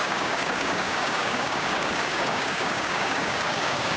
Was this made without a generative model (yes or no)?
no